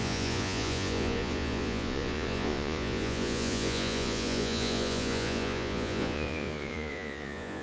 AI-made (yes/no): yes